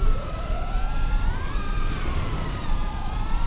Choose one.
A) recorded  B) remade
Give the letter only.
B